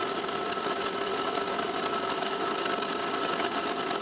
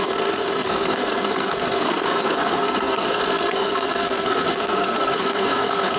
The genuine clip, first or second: first